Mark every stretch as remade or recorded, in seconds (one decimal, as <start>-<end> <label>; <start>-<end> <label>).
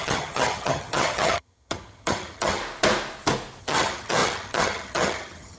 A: 0.0-2.6 remade; 2.6-3.6 recorded; 3.6-5.6 remade